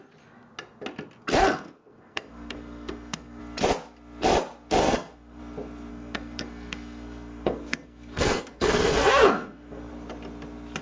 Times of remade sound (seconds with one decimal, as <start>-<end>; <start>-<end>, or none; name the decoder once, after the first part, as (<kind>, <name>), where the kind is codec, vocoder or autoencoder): 1.4-3.4 (codec, SNAC); 4.8-5.4; 5.9-9.9